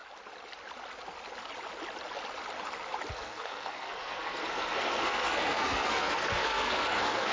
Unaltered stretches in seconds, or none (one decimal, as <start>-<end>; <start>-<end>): 0.0-3.1